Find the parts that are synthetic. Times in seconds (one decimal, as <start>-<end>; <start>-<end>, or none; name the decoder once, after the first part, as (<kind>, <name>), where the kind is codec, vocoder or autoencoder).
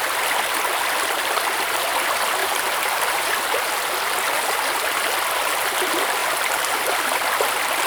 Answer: 2.4-3.4 (vocoder, BigVGAN v2); 6.2-6.8